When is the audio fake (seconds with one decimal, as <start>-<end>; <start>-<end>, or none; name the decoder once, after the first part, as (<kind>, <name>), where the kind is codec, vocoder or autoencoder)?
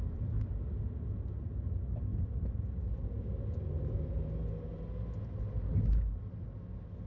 none